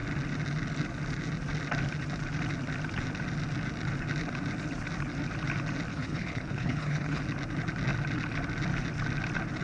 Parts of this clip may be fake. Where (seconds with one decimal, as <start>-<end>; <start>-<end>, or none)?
5.9-7.2

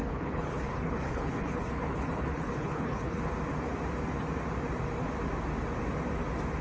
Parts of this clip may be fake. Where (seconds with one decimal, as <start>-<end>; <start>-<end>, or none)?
0.0-3.2

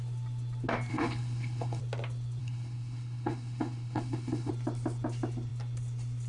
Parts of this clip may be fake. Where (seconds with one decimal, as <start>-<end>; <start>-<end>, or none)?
0.9-1.8; 2.4-4.5

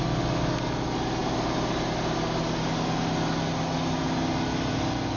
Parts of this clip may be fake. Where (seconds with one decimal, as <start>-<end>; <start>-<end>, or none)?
none

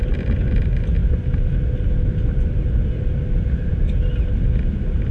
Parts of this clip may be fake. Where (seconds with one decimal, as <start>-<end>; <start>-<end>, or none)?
none

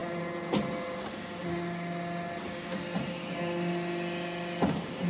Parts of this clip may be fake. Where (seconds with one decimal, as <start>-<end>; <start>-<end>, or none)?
none

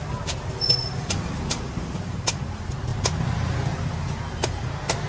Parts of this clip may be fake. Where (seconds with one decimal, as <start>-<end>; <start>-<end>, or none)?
none